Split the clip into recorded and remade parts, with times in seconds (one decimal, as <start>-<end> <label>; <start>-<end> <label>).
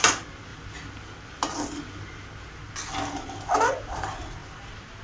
0.0-5.0 recorded